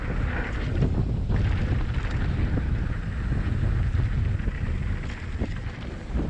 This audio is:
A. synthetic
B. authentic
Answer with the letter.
B